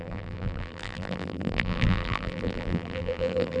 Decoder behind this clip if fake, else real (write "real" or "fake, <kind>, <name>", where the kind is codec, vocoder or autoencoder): fake, vocoder, BigVGAN v2